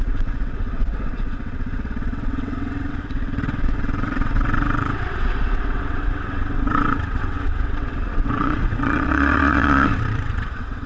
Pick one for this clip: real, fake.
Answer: fake